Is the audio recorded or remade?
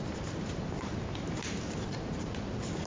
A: recorded